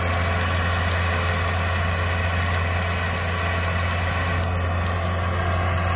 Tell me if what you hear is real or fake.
real